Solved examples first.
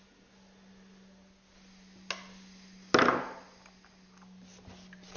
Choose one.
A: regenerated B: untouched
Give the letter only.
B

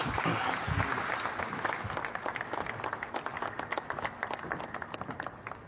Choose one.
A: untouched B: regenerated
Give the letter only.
A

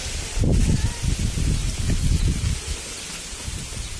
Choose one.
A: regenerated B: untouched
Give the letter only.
B